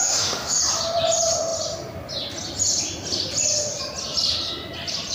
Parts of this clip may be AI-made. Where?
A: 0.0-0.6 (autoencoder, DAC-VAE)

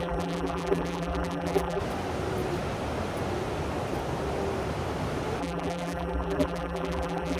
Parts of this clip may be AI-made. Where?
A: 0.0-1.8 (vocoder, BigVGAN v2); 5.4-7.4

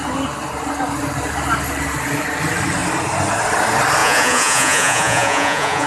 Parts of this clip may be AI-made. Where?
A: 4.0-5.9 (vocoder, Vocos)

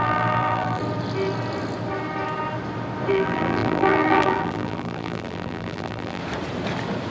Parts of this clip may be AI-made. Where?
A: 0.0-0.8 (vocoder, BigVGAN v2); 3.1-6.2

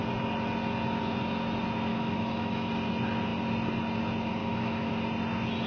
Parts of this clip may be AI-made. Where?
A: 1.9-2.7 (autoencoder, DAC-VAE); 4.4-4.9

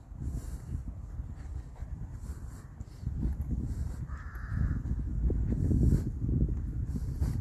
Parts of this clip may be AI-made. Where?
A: 1.8-4.3 (vocoder, BigVGAN v2)

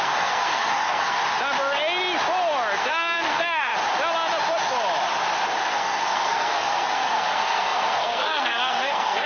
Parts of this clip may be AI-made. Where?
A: 0.0-1.2 (codec, SNAC); 2.8-3.7; 5.7-9.3